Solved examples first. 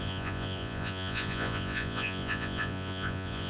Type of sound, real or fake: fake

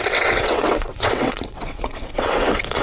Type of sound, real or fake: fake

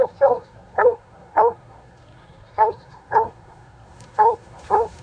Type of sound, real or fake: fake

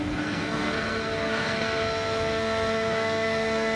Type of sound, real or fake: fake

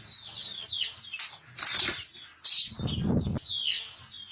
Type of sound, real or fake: real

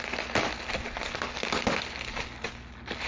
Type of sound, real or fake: real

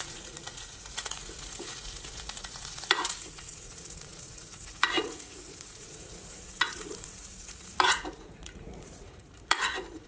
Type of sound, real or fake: fake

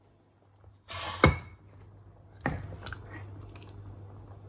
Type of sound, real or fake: real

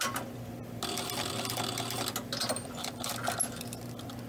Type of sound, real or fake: real